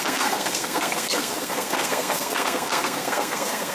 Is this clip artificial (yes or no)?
yes